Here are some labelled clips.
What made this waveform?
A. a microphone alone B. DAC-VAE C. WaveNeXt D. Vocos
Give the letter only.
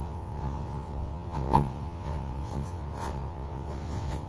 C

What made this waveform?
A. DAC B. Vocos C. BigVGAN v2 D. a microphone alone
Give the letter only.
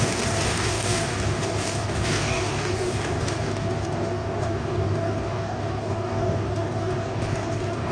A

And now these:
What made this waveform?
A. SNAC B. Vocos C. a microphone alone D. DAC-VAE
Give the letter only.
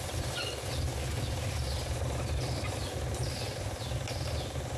C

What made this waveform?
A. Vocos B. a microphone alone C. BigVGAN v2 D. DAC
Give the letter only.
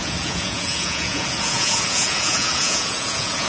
A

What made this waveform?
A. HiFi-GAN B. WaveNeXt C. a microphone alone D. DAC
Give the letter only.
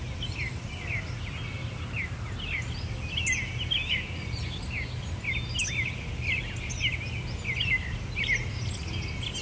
C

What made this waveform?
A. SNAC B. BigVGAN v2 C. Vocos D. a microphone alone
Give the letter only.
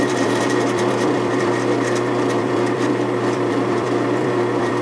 B